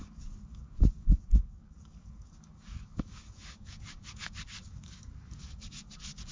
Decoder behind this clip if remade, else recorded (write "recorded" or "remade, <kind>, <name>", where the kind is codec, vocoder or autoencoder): remade, codec, DAC